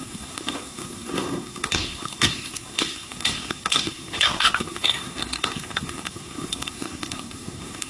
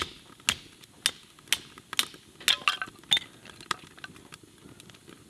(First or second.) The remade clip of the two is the first